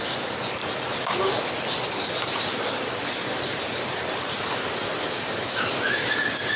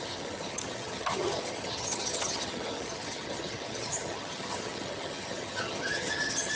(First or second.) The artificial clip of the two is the second